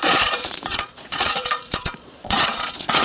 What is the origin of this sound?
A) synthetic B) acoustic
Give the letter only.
A